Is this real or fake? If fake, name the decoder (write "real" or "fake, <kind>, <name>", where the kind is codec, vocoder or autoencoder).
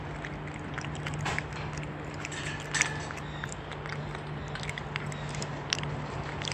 real